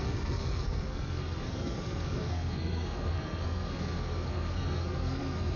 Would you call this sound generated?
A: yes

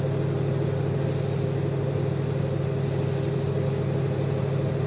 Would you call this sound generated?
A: no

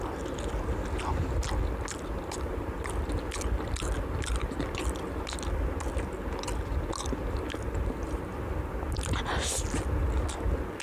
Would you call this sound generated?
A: no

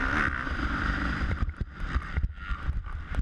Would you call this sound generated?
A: yes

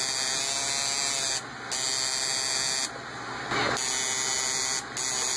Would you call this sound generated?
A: no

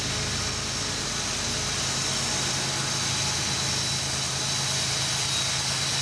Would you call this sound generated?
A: no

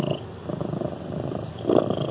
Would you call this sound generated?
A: no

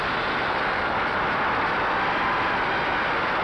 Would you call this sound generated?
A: no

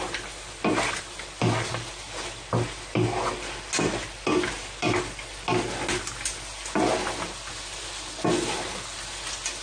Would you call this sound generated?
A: no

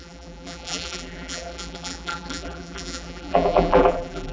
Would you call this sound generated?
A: yes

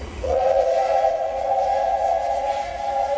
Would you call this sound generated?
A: yes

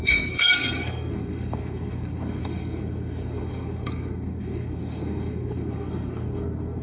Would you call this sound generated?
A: yes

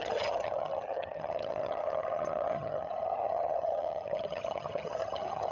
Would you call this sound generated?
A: yes